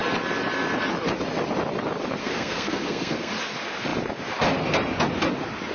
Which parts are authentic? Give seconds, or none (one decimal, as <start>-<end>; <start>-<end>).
0.0-2.2; 3.3-5.7